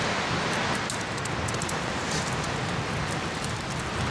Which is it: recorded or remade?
recorded